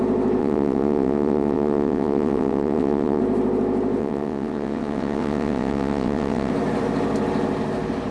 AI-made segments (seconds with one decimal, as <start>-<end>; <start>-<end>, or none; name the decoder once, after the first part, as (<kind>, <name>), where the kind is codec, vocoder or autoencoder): 0.4-3.2 (vocoder, WaveNeXt); 4.0-6.5